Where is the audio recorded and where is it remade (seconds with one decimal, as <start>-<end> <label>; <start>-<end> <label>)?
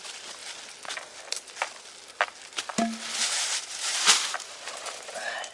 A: 0.0-0.4 remade; 0.4-3.2 recorded; 3.2-5.5 remade